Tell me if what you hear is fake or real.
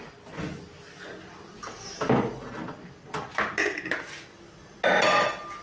real